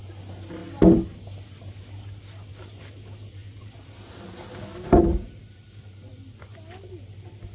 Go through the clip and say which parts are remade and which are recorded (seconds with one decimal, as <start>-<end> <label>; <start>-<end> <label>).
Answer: 0.0-7.5 recorded